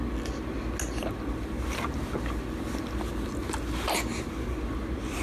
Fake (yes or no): no